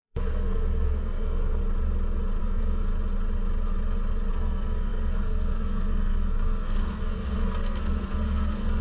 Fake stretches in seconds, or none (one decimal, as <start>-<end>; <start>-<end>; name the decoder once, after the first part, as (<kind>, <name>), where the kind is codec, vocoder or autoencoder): 0.0-1.6 (codec, SNAC); 2.4-2.9; 4.3-8.8